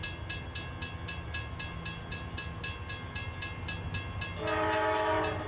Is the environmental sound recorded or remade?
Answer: recorded